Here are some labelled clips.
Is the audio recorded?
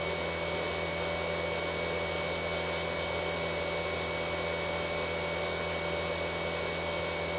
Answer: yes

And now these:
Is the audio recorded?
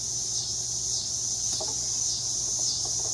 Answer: yes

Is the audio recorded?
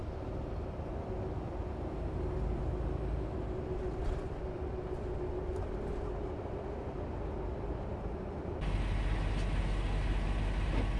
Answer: yes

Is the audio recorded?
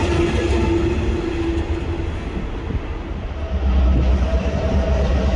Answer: yes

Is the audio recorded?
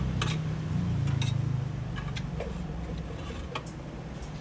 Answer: yes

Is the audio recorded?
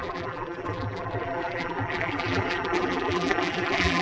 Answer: no